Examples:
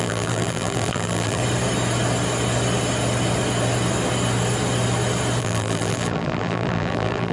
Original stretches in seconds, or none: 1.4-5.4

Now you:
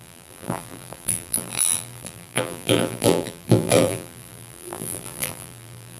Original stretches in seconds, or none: none

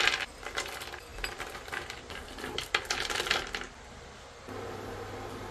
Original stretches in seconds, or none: 0.0-5.5

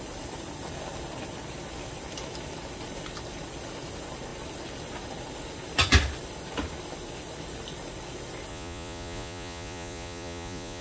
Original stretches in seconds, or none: 0.0-8.5

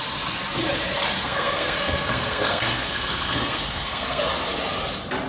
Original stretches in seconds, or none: 0.0-1.2; 4.2-5.3